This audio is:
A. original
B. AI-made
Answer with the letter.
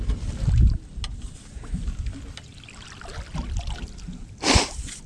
A